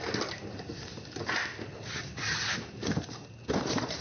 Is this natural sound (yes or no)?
yes